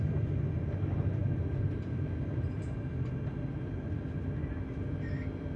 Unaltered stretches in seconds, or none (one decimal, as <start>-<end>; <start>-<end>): 0.0-5.6

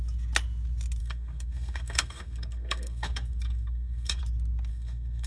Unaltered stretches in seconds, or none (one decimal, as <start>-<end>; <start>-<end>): 0.0-1.0; 4.2-4.7

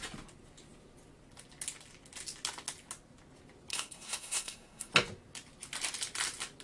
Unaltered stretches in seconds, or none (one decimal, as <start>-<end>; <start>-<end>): 0.0-3.7; 4.9-6.6

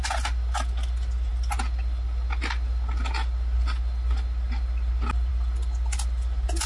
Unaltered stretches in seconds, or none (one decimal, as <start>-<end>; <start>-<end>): 0.0-6.7

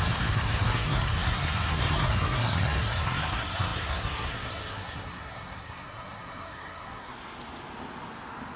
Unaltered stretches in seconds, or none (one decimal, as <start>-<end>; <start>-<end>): 7.1-8.6